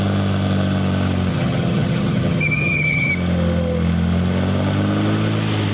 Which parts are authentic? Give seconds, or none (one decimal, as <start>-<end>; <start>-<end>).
0.0-1.3; 3.1-5.7